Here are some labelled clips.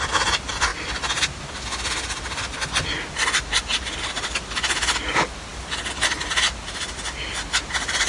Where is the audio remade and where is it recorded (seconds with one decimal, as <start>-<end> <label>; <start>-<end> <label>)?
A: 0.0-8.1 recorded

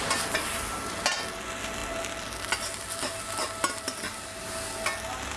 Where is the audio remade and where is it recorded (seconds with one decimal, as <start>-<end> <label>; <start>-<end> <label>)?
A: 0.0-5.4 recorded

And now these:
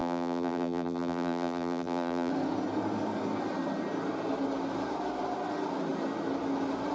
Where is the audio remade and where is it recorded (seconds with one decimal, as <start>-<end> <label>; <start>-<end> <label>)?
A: 0.0-2.3 remade; 2.3-6.9 recorded

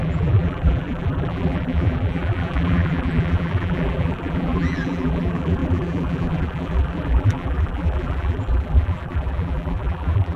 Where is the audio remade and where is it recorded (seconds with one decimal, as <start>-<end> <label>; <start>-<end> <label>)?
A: 0.0-10.4 remade

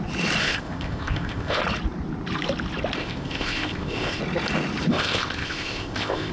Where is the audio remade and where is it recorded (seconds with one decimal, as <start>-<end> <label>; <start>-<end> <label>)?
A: 0.0-0.4 recorded; 0.4-1.6 remade; 1.6-3.0 recorded; 3.0-4.2 remade; 4.2-4.9 recorded; 4.9-6.3 remade

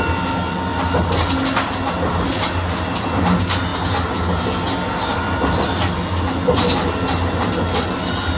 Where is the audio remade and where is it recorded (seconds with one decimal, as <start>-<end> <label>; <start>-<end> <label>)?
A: 0.0-8.4 recorded

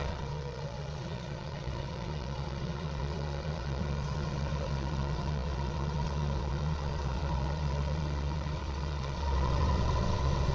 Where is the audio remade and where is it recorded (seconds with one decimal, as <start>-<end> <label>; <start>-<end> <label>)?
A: 0.0-10.5 remade